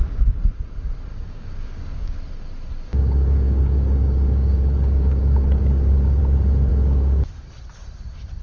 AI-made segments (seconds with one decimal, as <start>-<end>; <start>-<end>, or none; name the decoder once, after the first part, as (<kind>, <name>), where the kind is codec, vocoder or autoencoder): 1.1-2.2 (codec, DAC); 2.9-6.2; 6.7-7.3